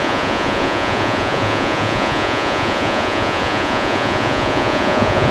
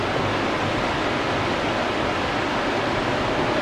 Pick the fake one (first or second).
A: first